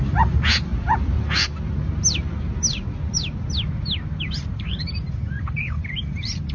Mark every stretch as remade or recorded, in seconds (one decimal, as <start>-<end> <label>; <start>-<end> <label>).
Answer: 0.0-0.7 remade; 0.7-4.4 recorded; 4.4-6.5 remade